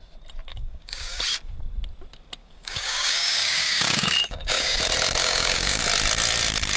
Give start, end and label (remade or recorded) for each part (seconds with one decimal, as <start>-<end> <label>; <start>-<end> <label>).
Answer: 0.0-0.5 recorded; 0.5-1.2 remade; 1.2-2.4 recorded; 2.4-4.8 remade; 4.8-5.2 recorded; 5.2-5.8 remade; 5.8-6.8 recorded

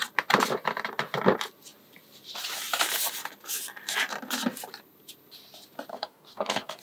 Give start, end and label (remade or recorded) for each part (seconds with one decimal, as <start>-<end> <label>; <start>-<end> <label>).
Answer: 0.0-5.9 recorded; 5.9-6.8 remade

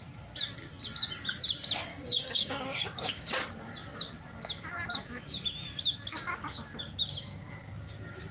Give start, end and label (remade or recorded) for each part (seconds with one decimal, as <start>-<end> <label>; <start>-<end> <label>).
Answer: 0.0-1.9 recorded; 1.9-3.3 remade; 3.3-8.3 recorded